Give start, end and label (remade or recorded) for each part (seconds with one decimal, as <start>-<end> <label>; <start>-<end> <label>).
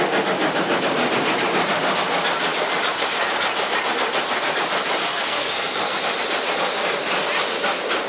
0.0-5.1 recorded; 5.1-6.0 remade; 6.0-8.1 recorded